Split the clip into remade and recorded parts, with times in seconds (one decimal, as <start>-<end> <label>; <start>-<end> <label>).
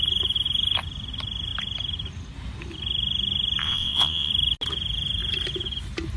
0.0-3.6 recorded; 3.6-4.3 remade; 4.3-6.2 recorded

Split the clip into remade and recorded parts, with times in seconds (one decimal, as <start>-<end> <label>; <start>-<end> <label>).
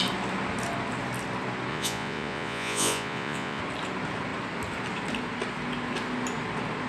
0.0-1.7 recorded; 1.7-3.6 remade; 3.6-6.9 recorded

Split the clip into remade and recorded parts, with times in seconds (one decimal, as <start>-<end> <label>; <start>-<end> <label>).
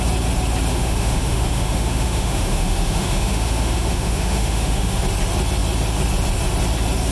0.0-0.7 recorded; 0.7-5.0 remade; 5.0-7.1 recorded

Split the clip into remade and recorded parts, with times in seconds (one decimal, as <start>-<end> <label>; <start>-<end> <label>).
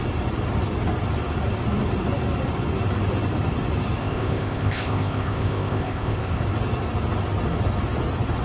0.0-4.0 recorded; 4.0-6.4 remade; 6.4-8.4 recorded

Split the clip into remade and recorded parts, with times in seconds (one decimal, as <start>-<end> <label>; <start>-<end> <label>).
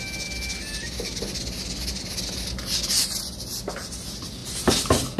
0.0-5.2 recorded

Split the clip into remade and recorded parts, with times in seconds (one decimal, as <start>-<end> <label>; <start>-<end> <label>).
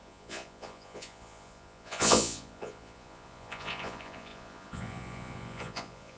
0.0-6.2 remade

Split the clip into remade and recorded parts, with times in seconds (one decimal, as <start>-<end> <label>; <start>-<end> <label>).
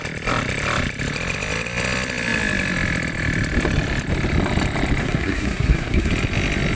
0.0-5.0 recorded; 5.0-6.1 remade; 6.1-6.8 recorded